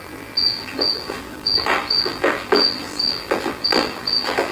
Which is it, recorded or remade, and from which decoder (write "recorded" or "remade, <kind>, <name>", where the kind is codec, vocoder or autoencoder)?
remade, vocoder, BigVGAN v2